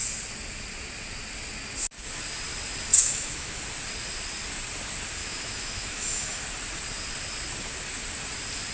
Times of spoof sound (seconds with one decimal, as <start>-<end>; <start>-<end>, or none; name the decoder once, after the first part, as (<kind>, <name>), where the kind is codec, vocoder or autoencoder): 2.9-3.6 (autoencoder, DAC-VAE); 5.2-6.4